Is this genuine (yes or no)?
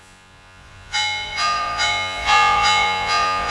no